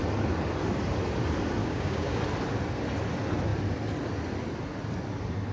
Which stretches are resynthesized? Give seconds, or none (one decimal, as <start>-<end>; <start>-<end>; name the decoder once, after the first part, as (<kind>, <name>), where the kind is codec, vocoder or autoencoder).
1.6-2.2 (codec, DAC)